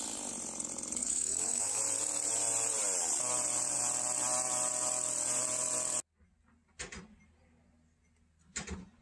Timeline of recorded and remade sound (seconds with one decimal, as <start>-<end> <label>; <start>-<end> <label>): 0.0-1.0 recorded; 1.0-1.8 remade; 1.8-9.0 recorded